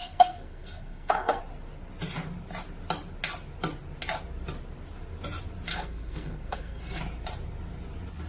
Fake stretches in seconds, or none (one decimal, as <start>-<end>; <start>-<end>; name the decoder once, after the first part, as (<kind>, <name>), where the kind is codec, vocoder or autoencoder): 0.0-1.4 (codec, SNAC); 5.7-7.0